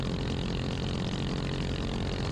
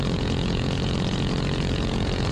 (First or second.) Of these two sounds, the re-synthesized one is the second